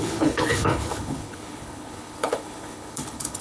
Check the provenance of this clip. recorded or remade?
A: remade